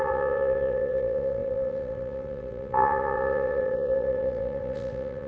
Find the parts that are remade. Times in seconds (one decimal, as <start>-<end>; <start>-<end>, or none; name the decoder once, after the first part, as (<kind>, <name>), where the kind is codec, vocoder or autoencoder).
0.0-5.3 (vocoder, WaveNeXt)